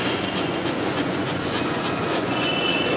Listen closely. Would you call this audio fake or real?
fake